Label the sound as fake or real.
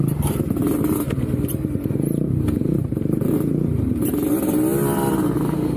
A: real